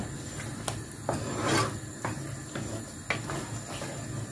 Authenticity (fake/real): real